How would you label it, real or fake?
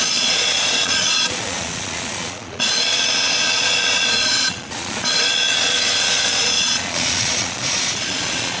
fake